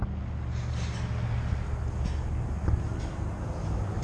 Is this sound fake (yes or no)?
no